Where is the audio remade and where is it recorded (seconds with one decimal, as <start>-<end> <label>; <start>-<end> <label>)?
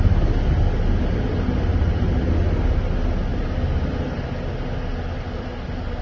0.0-6.0 recorded